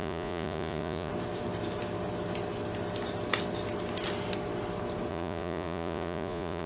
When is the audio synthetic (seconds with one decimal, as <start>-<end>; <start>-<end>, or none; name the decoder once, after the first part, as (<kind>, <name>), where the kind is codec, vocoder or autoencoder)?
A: 0.0-1.1 (vocoder, Vocos); 5.1-6.7